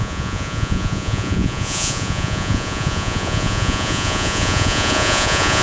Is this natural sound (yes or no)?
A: no